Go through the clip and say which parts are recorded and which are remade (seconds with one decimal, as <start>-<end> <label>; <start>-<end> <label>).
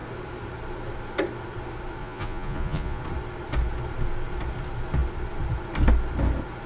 0.0-2.0 recorded; 2.0-3.0 remade; 3.0-6.7 recorded